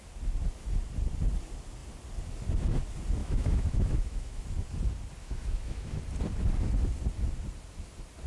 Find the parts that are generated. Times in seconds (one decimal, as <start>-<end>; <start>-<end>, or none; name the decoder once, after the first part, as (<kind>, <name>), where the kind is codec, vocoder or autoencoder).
3.2-4.4 (autoencoder, DAC-VAE); 5.2-6.0